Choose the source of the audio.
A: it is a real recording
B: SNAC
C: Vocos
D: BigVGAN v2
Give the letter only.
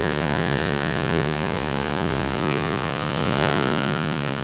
C